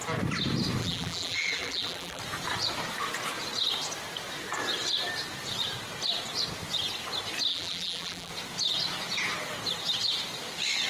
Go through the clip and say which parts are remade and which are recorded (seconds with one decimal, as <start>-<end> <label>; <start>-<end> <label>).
0.0-0.8 recorded; 0.8-2.2 remade; 2.2-7.5 recorded; 7.5-8.3 remade; 8.3-10.9 recorded